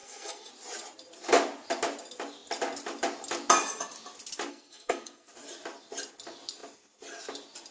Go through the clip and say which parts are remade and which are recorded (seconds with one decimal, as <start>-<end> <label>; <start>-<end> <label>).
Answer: 0.0-0.5 remade; 0.5-4.5 recorded; 4.5-5.3 remade; 5.3-7.7 recorded